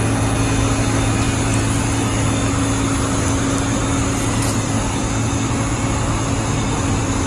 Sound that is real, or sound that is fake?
real